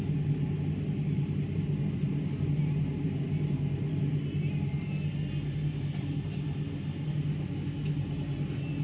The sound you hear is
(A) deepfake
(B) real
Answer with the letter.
B